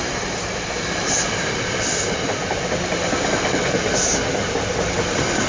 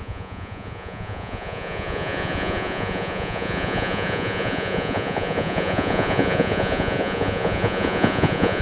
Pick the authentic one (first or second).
first